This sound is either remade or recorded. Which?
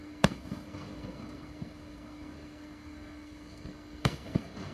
remade